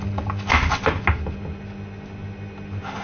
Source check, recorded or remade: recorded